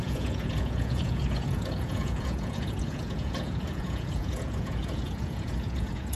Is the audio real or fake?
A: fake